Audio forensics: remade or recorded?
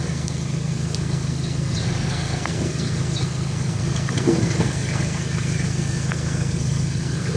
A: remade